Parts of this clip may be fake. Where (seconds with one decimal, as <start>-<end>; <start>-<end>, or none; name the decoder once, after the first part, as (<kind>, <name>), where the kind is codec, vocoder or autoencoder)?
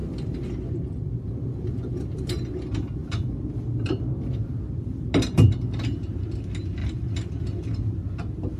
0.0-2.5 (vocoder, BigVGAN v2); 3.0-5.1; 6.8-8.6